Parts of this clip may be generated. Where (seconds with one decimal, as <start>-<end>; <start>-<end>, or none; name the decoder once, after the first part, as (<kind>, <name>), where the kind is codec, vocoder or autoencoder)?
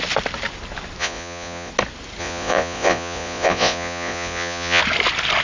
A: 1.0-1.7 (vocoder, Vocos); 2.2-4.8